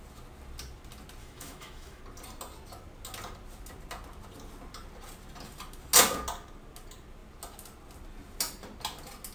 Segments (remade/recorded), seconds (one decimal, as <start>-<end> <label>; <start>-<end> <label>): 0.0-1.2 recorded; 1.2-2.0 remade; 2.0-9.3 recorded